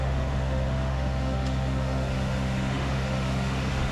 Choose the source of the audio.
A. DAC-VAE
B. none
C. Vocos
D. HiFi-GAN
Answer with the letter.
A